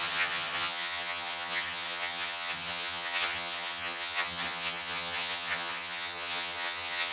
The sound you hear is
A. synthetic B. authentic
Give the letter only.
A